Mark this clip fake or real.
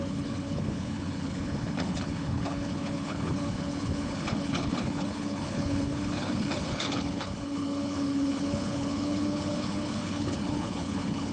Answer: fake